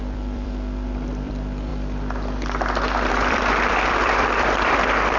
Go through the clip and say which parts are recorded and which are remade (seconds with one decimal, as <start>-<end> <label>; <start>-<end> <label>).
0.0-1.7 remade; 1.7-3.1 recorded; 3.1-5.2 remade